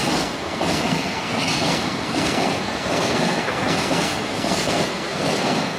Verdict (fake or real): fake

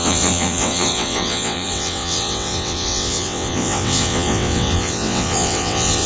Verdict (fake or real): fake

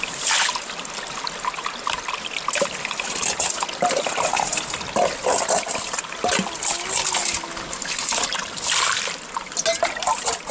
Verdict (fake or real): real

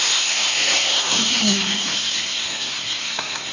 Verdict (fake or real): fake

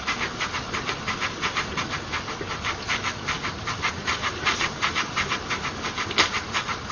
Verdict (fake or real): real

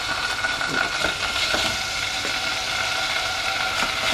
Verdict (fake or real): real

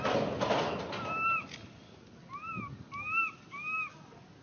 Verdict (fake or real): real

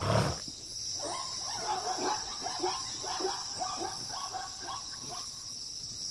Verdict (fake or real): real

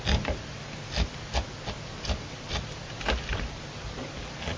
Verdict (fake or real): real